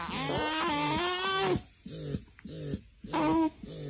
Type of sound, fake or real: real